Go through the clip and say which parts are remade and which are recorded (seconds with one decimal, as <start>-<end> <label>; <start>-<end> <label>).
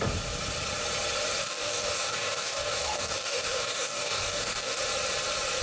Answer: 0.0-1.4 recorded; 1.4-4.8 remade; 4.8-5.6 recorded